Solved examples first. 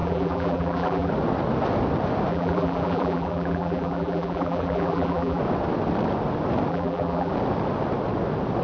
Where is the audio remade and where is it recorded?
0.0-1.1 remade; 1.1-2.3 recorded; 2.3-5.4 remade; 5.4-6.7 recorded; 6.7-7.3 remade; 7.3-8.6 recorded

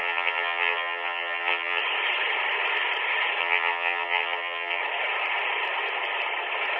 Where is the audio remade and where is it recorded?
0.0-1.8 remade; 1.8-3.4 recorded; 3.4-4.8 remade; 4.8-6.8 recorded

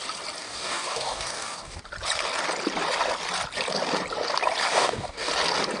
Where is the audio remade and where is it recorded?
0.0-0.4 recorded; 0.4-1.8 remade; 1.8-4.7 recorded; 4.7-5.3 remade; 5.3-5.8 recorded

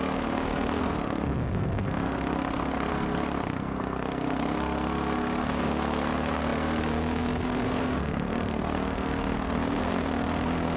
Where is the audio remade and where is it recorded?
0.0-10.8 remade

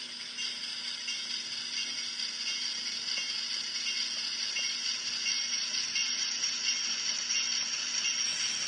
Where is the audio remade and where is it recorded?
0.0-6.0 recorded; 6.0-6.7 remade; 6.7-8.7 recorded

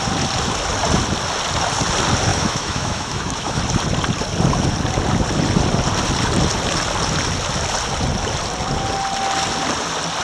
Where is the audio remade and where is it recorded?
0.0-2.3 recorded; 2.3-3.6 remade; 3.6-10.2 recorded